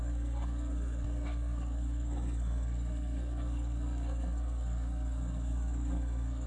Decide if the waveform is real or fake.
fake